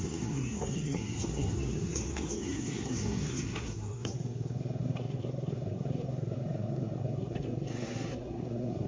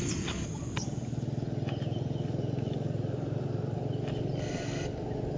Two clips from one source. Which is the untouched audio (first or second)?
second